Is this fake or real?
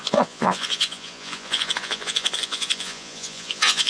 fake